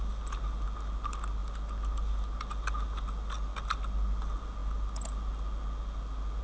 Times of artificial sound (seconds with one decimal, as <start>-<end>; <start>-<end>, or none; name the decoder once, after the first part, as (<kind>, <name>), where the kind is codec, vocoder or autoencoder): none

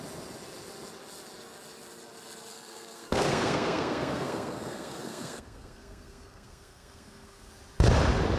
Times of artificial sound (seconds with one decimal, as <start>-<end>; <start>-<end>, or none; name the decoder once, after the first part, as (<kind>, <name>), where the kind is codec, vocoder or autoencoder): 2.5-7.5 (codec, SNAC)

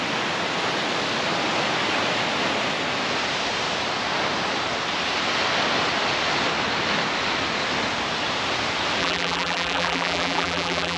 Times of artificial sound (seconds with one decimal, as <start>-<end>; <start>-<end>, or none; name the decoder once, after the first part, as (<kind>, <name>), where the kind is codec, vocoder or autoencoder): 9.0-11.0 (vocoder, BigVGAN v2)

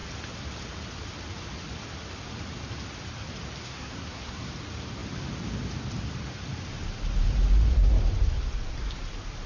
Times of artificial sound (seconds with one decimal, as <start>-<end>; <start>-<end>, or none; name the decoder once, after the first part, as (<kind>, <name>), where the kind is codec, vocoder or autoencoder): 3.6-4.5 (codec, SNAC)

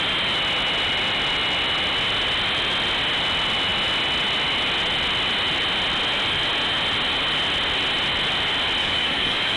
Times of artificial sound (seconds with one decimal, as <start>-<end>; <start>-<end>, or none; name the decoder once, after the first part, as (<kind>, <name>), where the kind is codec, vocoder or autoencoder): 8.8-9.6 (codec, DAC)

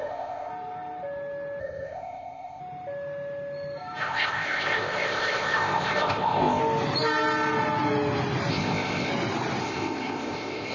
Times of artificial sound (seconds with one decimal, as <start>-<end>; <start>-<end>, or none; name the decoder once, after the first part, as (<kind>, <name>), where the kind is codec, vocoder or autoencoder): 0.0-0.5 (codec, ZipCodec); 1.6-2.6; 4.0-6.6; 8.5-9.1; 9.6-10.7

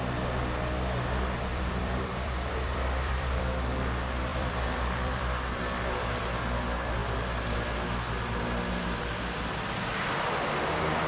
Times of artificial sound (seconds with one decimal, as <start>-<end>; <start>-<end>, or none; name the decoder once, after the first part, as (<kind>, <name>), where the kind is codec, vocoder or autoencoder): 1.5-3.4 (vocoder, BigVGAN v2); 4.3-5.6

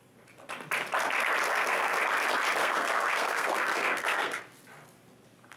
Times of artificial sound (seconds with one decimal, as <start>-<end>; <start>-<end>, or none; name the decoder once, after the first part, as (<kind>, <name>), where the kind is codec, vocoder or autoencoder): 1.5-2.0 (codec, SNAC); 2.6-4.4